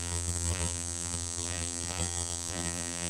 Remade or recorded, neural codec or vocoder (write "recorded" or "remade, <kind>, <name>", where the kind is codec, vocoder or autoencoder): remade, vocoder, BigVGAN v2